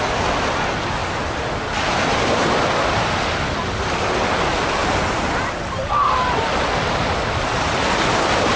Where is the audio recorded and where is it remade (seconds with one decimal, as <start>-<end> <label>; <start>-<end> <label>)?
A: 0.0-8.6 recorded